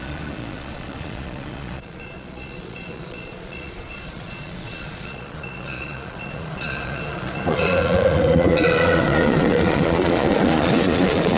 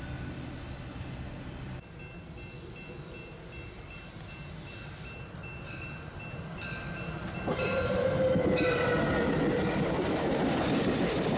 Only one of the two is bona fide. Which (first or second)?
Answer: second